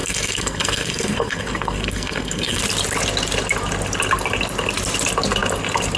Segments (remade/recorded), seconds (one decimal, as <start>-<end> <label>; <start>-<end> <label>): 0.0-2.6 remade; 2.6-6.0 recorded